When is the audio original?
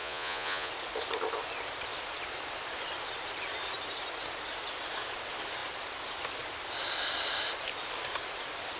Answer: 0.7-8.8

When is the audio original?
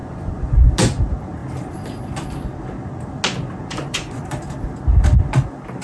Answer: 0.7-3.7; 4.2-5.8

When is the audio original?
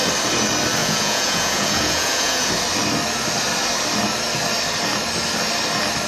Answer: 0.0-0.8; 2.5-6.1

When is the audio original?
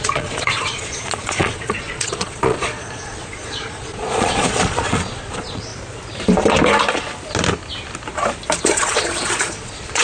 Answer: 5.7-8.6